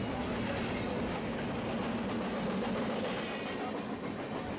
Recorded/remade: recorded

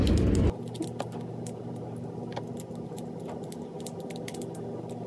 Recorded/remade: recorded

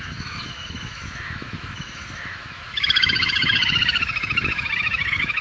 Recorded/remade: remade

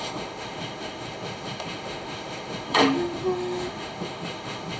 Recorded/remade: remade